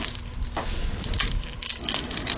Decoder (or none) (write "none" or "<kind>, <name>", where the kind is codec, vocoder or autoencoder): none